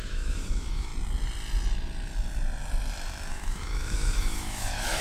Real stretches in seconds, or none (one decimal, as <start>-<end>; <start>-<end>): 0.9-3.3